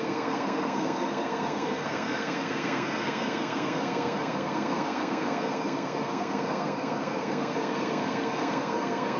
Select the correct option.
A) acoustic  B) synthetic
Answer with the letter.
B